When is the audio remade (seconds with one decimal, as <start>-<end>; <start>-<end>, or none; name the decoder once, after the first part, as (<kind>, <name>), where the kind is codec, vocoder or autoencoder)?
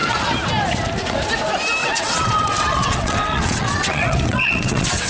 1.8-5.1 (vocoder, WaveNeXt)